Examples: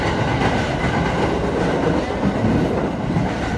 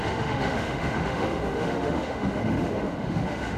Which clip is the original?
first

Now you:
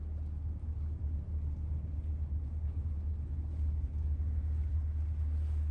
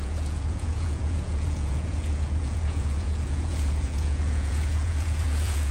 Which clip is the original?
first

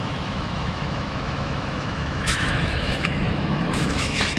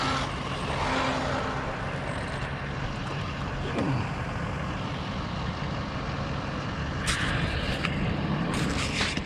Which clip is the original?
second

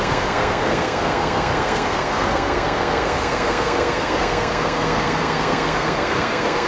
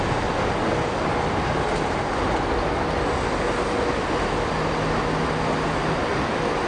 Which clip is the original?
second